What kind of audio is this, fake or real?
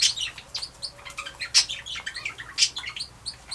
real